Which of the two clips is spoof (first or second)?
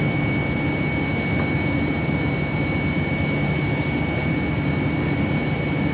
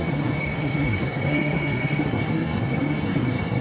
second